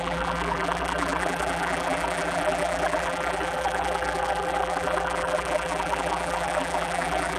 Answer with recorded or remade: remade